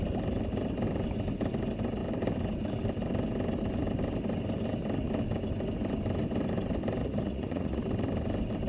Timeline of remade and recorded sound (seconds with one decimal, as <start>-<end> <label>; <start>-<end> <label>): 0.0-7.0 recorded; 7.0-7.8 remade; 7.8-8.7 recorded

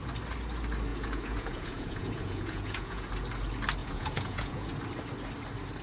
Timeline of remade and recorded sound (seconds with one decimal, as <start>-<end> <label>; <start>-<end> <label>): 0.0-0.9 recorded; 0.9-3.1 remade; 3.1-3.8 recorded; 3.8-4.7 remade; 4.7-5.8 recorded

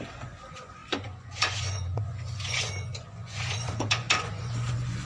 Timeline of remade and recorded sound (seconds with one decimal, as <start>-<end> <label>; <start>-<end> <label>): 0.0-5.0 remade

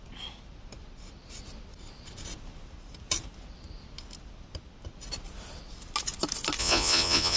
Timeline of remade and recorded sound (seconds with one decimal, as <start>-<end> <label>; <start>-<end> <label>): 0.0-6.6 recorded; 6.6-7.4 remade